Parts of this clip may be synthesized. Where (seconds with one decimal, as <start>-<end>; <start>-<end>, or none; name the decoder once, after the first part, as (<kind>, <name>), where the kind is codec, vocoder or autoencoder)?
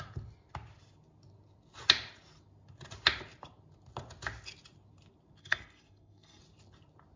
5.4-6.4 (codec, SNAC)